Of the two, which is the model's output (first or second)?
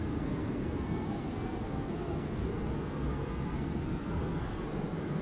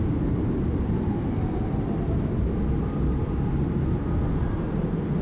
first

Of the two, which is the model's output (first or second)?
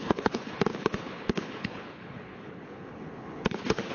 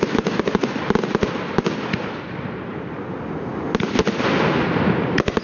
first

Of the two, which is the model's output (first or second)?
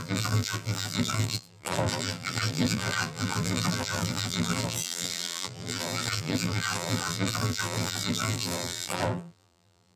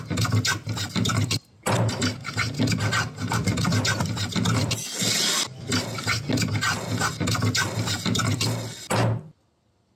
first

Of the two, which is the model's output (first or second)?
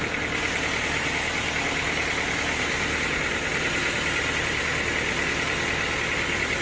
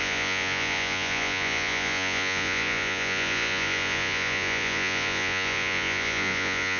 second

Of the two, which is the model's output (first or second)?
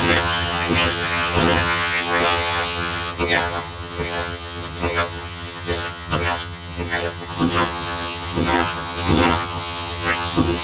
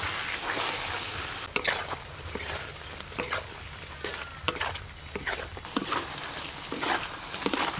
first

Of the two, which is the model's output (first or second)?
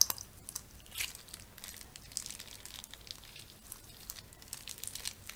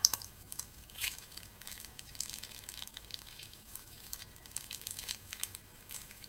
second